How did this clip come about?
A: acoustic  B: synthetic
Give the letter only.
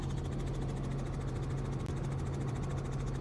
A